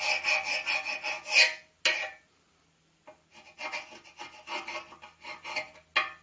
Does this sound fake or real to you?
real